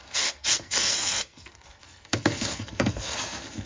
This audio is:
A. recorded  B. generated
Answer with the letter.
B